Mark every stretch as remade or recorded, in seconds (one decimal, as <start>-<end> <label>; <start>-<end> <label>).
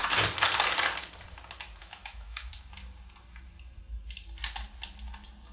0.0-1.8 recorded; 1.8-2.5 remade; 2.5-5.5 recorded